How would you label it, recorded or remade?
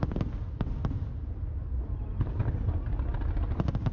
recorded